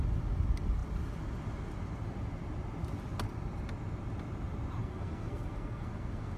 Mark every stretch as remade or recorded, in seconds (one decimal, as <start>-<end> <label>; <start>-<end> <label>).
0.0-4.8 recorded; 4.8-6.4 remade